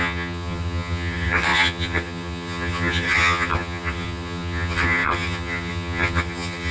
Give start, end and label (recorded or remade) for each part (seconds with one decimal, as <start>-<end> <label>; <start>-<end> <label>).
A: 0.0-6.7 remade